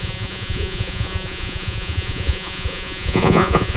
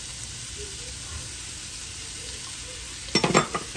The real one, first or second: second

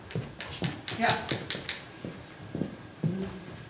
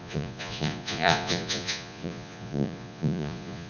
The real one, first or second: first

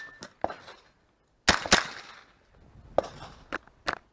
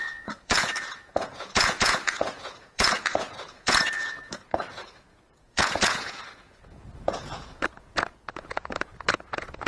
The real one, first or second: first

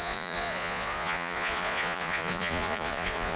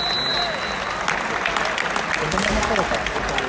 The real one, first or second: second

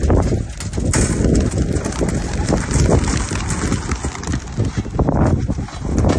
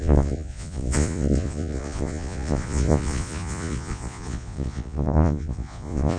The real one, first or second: first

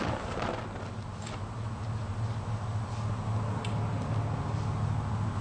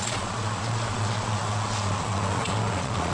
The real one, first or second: first